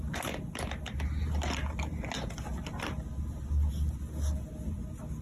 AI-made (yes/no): no